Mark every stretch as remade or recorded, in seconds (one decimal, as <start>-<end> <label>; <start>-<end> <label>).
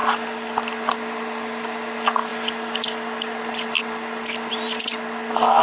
0.0-5.6 recorded